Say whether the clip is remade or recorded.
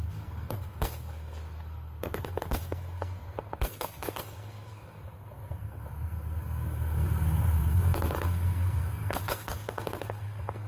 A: remade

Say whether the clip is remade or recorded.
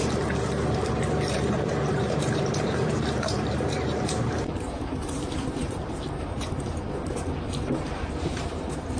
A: remade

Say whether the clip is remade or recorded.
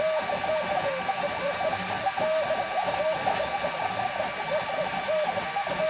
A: recorded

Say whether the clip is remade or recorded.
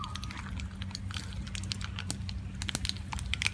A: recorded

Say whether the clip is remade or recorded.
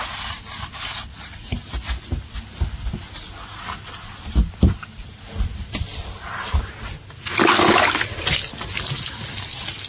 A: recorded